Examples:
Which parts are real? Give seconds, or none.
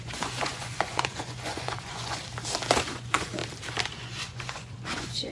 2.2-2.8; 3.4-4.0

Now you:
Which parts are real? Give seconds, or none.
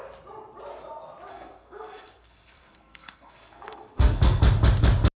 0.0-1.3; 4.4-5.2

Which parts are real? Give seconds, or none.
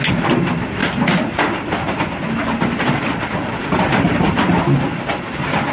0.0-3.6; 4.3-5.7